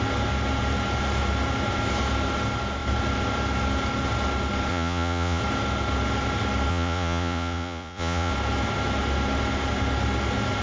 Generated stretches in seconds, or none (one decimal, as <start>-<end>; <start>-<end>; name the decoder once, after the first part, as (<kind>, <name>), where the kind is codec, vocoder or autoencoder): 4.7-5.4 (vocoder, Vocos); 6.7-8.3